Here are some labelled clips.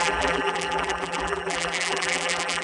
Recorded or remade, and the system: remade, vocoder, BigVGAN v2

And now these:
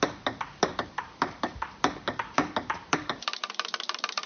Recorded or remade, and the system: remade, vocoder, BigVGAN v2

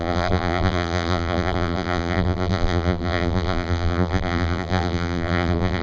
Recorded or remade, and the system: remade, vocoder, BigVGAN v2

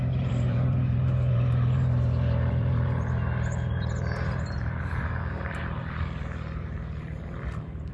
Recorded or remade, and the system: remade, vocoder, BigVGAN v2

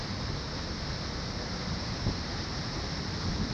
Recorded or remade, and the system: recorded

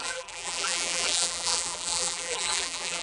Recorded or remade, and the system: remade, vocoder, BigVGAN v2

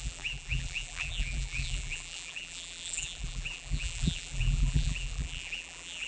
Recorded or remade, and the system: remade, vocoder, BigVGAN v2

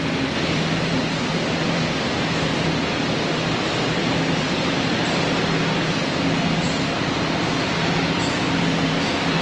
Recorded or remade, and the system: remade, vocoder, BigVGAN v2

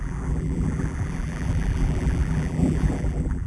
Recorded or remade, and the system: remade, vocoder, BigVGAN v2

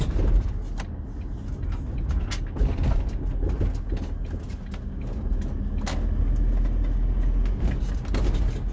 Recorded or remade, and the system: recorded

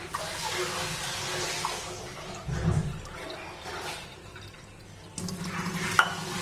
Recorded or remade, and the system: recorded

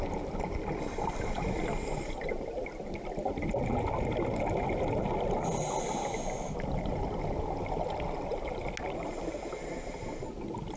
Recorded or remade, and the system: recorded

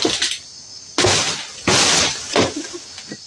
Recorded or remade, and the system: recorded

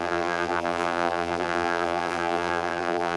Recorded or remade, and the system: remade, vocoder, BigVGAN v2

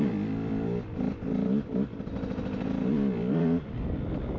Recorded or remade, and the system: recorded